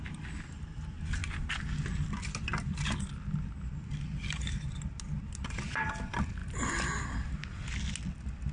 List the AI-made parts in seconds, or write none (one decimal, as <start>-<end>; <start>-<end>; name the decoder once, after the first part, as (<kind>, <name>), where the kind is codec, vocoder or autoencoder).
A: none